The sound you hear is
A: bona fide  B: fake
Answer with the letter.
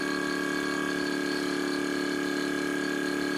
A